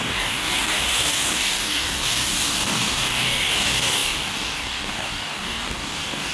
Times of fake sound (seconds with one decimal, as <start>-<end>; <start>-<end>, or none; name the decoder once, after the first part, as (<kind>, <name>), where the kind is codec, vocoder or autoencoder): 0.0-6.3 (codec, DAC)